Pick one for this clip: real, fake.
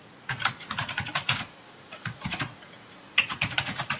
fake